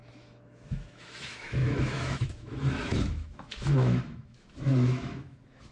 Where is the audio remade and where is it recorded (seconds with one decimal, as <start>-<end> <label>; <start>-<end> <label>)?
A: 0.0-5.7 remade